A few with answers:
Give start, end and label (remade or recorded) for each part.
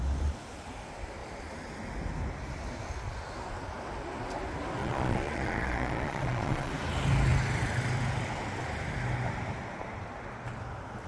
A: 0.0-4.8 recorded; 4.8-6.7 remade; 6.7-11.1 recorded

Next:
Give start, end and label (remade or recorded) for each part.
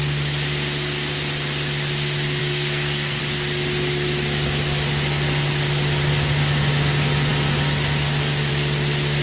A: 0.0-2.4 recorded; 2.4-3.2 remade; 3.2-9.2 recorded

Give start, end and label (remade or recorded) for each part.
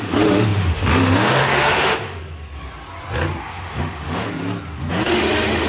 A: 0.0-2.2 remade; 2.2-3.4 recorded; 3.4-4.3 remade; 4.3-4.9 recorded; 4.9-5.7 remade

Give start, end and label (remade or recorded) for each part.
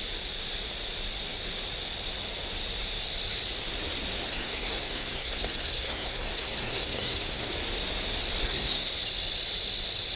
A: 0.0-4.3 recorded; 4.3-7.5 remade; 7.5-8.4 recorded; 8.4-9.0 remade; 9.0-10.2 recorded